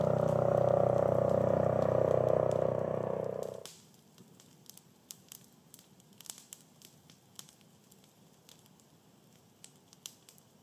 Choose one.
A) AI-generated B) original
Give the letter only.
B